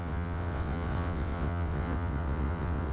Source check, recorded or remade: remade